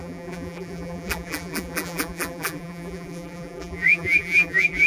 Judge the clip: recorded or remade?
remade